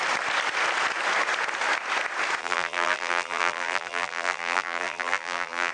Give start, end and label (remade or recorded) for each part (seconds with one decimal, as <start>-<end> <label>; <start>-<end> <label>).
0.0-2.4 recorded; 2.4-5.7 remade